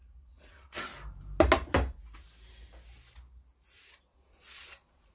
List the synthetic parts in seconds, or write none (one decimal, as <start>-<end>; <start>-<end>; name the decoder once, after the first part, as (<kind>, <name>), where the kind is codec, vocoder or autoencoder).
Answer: 0.0-0.9 (vocoder, Vocos); 4.0-5.1